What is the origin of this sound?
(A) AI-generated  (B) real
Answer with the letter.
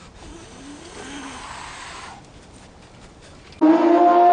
B